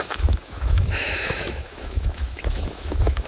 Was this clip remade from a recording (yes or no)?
yes